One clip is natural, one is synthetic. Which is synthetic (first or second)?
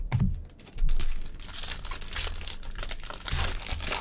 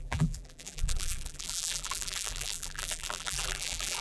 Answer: second